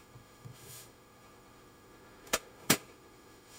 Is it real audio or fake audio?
fake